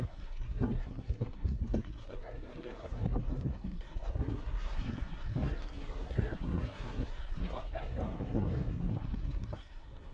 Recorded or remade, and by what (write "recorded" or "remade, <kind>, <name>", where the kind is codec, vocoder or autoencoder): remade, codec, SNAC